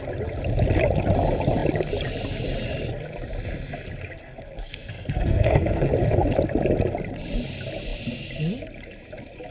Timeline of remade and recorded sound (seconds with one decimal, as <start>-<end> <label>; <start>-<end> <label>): 0.0-4.2 recorded; 4.2-5.9 remade; 5.9-9.5 recorded